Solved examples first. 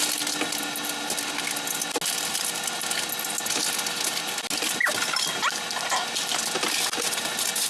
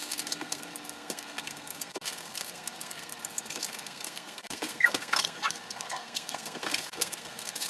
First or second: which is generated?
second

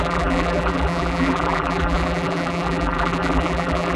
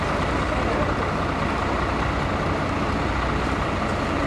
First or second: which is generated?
first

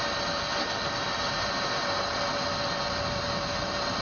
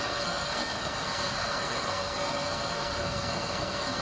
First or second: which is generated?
second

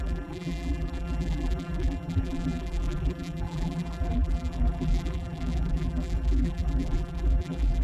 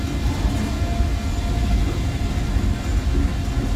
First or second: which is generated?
first